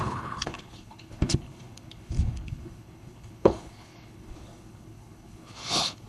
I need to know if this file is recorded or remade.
remade